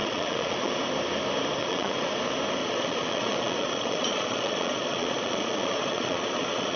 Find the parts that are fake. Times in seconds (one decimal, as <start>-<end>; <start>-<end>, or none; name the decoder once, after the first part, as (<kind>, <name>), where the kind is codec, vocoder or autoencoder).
0.0-0.7 (vocoder, Vocos); 1.6-2.1; 2.6-6.8